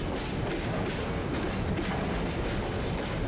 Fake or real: real